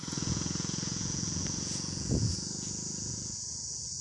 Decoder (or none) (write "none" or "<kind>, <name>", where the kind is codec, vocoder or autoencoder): vocoder, Vocos